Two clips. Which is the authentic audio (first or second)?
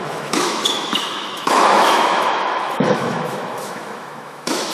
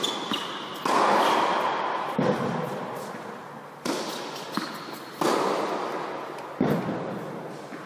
second